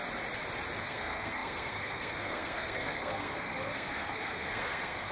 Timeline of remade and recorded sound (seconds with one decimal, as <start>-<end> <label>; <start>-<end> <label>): 0.0-0.8 recorded; 0.8-5.1 remade